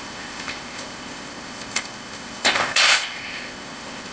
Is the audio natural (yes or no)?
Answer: no